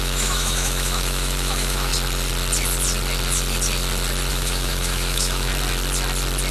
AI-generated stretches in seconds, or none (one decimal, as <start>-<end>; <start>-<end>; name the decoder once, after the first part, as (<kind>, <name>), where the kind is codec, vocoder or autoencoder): 0.0-1.9 (autoencoder, DAC-VAE); 4.3-5.5